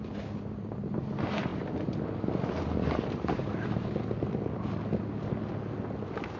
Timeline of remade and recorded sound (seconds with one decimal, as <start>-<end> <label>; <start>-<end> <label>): 0.0-6.4 recorded